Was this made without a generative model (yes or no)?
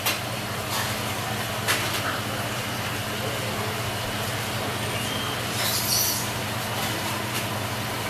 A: yes